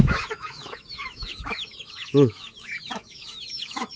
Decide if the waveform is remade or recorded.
remade